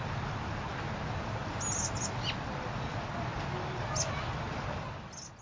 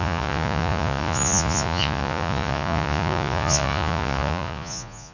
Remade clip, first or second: second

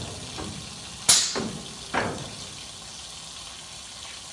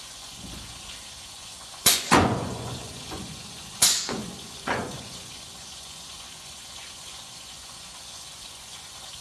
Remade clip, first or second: second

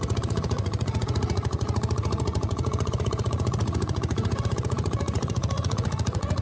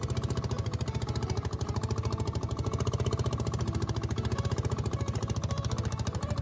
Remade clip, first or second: first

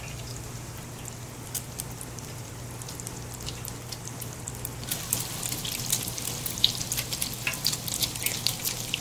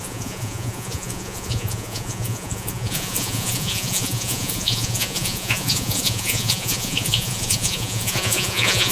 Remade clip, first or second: second